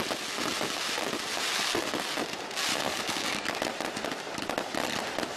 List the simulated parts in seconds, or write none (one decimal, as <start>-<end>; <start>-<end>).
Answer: 2.7-3.5